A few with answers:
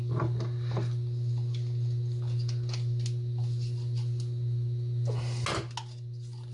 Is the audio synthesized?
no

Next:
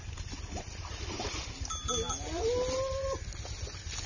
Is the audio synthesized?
no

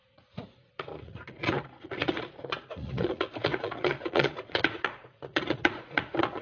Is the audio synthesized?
yes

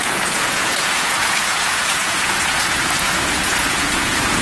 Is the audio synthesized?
yes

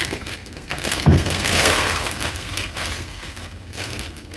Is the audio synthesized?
yes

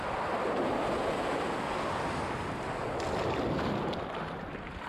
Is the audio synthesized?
no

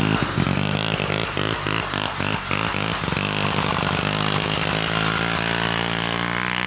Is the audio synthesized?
no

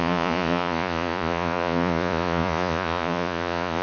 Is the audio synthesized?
yes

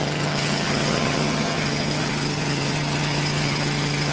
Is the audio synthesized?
yes